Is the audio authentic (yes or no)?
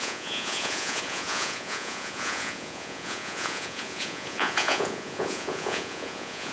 no